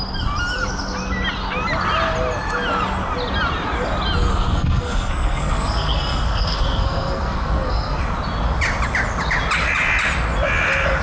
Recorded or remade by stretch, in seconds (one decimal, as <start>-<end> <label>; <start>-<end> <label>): 0.0-4.3 recorded; 4.3-8.0 remade; 8.0-11.0 recorded